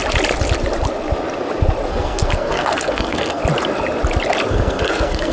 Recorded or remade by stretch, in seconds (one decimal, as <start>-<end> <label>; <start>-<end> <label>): 0.0-1.9 recorded; 1.9-3.4 remade; 3.4-4.5 recorded; 4.5-5.3 remade